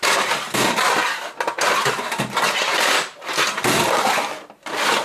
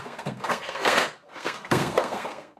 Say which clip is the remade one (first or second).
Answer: second